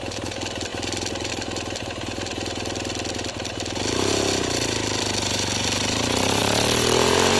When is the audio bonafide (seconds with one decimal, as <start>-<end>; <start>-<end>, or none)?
0.0-7.4